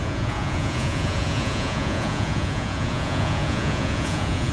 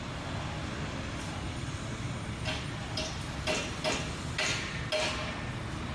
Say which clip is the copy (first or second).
first